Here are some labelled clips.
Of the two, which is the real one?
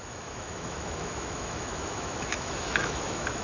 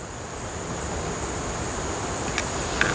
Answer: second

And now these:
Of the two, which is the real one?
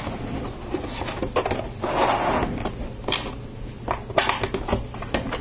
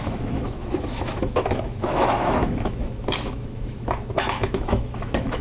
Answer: first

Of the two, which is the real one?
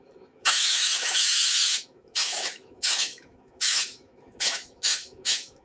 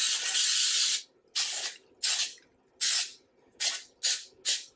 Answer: second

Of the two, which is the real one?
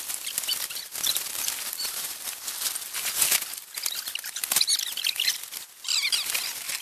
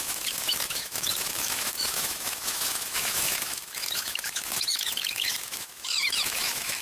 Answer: first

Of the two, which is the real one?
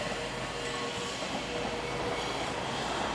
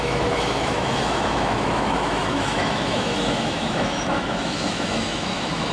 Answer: first